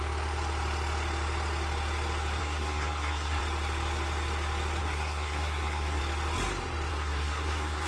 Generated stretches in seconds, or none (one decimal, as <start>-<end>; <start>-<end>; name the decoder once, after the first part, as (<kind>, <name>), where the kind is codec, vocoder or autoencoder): 2.4-3.4 (codec, SNAC); 4.8-6.0; 6.9-7.9